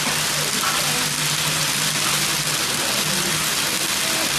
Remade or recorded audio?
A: recorded